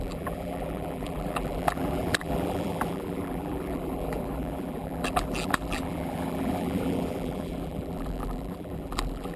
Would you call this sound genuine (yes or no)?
no